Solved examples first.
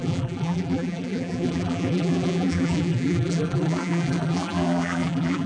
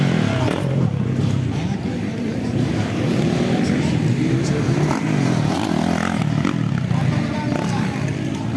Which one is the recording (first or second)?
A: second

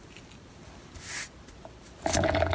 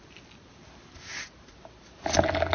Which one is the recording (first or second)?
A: second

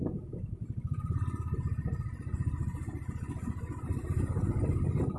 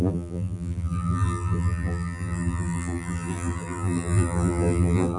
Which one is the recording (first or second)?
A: first